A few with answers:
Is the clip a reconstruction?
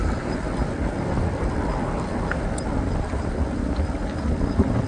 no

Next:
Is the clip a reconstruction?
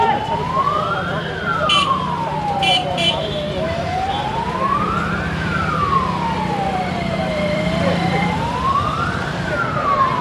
yes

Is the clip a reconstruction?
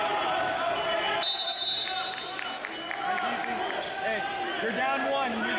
no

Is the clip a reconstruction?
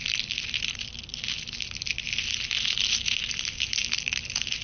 no